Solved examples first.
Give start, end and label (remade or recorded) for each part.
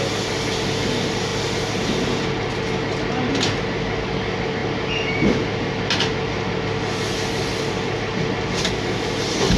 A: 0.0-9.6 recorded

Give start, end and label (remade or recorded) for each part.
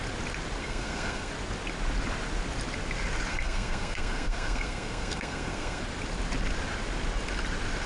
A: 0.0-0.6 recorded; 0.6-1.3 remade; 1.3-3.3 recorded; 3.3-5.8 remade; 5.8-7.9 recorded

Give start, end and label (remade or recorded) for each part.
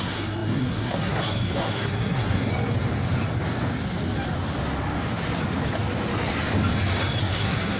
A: 0.0-2.5 remade; 2.5-7.2 recorded; 7.2-7.8 remade